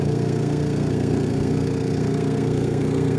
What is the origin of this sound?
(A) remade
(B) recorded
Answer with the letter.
A